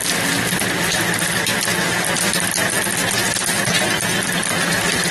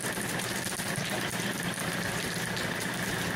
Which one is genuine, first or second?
first